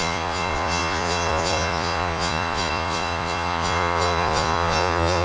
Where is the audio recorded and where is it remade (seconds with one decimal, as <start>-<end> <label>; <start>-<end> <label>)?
0.0-5.2 remade